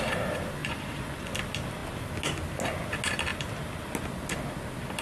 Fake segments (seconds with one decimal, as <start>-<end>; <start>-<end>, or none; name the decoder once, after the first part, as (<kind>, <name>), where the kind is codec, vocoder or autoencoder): 0.6-1.3 (vocoder, Vocos)